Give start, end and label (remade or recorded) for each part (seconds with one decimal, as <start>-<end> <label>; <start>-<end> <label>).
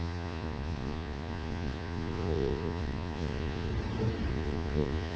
0.0-3.7 remade; 3.7-4.3 recorded; 4.3-5.2 remade